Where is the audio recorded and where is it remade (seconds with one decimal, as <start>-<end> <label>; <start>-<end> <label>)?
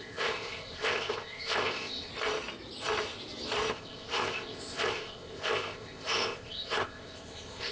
0.0-2.1 remade; 2.1-3.7 recorded; 3.7-7.7 remade